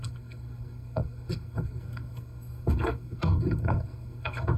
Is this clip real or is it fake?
fake